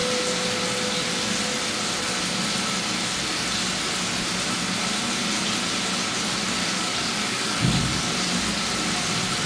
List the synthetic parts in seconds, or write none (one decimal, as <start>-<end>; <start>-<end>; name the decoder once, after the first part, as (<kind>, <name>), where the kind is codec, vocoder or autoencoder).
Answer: 6.6-8.0 (codec, DAC)

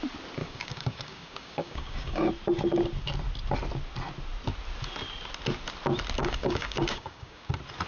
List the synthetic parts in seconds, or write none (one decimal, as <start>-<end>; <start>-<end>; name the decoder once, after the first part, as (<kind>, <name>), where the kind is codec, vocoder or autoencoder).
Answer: 0.4-2.3 (codec, DAC); 6.2-7.5

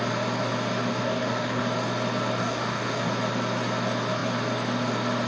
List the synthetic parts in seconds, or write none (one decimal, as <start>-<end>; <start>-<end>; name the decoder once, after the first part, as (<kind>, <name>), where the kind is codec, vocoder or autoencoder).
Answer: 0.9-1.6 (codec, DAC); 2.4-3.1

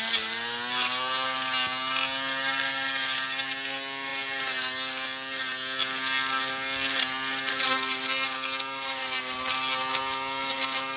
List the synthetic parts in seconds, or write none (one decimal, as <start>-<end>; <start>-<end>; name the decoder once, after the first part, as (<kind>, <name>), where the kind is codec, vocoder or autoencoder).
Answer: none